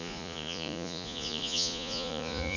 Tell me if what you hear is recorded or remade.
remade